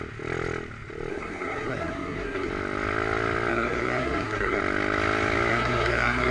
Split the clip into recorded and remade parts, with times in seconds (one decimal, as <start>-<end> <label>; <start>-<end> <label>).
0.0-1.1 recorded; 1.1-2.5 remade; 2.5-3.5 recorded; 3.5-4.6 remade; 4.6-5.5 recorded; 5.5-6.3 remade